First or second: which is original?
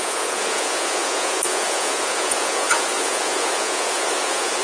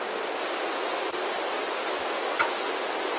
second